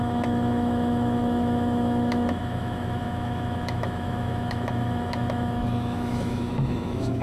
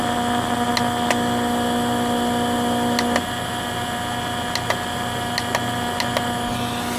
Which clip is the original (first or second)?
second